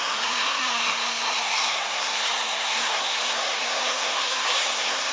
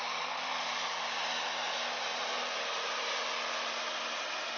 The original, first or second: second